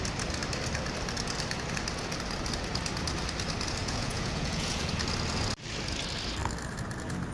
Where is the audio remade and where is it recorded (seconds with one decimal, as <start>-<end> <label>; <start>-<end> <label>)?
0.0-3.8 recorded; 3.8-4.9 remade; 4.9-7.3 recorded